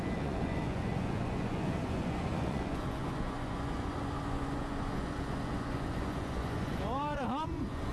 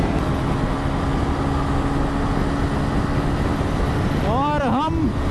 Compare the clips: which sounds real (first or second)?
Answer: second